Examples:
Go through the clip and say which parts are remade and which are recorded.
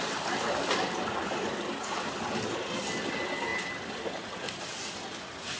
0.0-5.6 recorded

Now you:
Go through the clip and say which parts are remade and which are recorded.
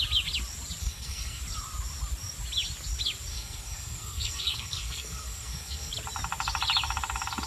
0.0-0.8 recorded; 0.8-1.4 remade; 1.4-3.3 recorded; 3.3-5.9 remade; 5.9-7.5 recorded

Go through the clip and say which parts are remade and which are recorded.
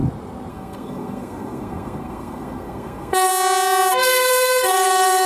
0.0-0.5 recorded; 0.5-3.3 remade; 3.3-3.9 recorded; 3.9-5.3 remade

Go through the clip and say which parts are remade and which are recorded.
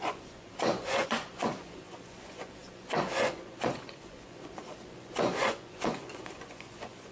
0.0-7.1 remade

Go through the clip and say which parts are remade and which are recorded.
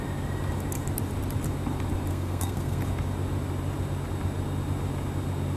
0.0-2.1 recorded; 2.1-2.8 remade; 2.8-5.6 recorded